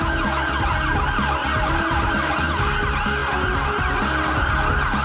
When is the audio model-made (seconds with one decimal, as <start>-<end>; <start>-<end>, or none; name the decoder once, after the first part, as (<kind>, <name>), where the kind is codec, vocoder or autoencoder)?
1.4-2.4 (vocoder, BigVGAN v2)